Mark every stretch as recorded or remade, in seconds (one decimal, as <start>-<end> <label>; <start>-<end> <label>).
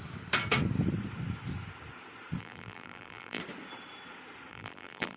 0.0-2.4 recorded; 2.4-3.4 remade; 3.4-4.5 recorded; 4.5-5.2 remade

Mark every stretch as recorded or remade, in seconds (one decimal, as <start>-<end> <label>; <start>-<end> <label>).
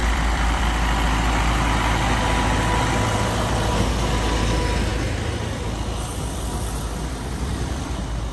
0.0-0.6 remade; 0.6-8.3 recorded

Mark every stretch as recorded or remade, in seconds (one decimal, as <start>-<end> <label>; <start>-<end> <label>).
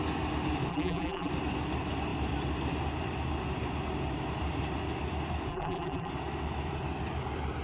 0.0-0.7 recorded; 0.7-1.3 remade; 1.3-5.5 recorded; 5.5-6.1 remade; 6.1-7.6 recorded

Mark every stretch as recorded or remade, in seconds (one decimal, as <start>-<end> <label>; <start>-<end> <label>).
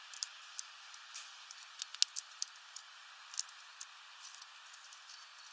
0.0-5.5 recorded